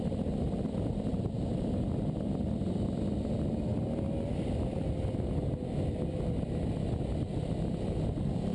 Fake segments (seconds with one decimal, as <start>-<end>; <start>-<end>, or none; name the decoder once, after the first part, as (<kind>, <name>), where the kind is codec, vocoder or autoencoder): none